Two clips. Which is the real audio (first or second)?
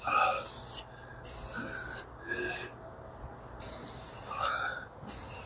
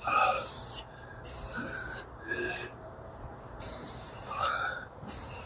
first